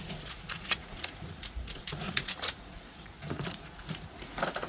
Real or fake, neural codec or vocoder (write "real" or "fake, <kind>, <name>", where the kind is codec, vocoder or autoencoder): fake, vocoder, Vocos